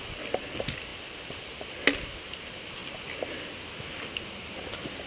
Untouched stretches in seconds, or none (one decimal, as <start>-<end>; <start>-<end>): 0.0-5.1